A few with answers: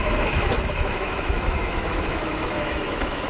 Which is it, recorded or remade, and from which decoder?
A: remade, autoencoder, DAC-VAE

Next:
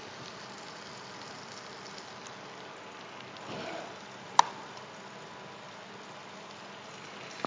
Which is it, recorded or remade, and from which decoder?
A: recorded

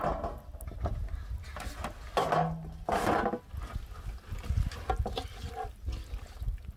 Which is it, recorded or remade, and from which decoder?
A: recorded